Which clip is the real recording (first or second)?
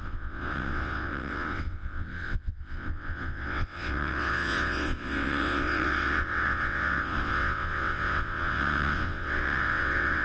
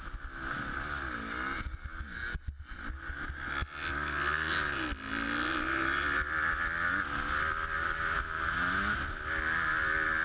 second